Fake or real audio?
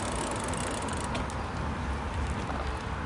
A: real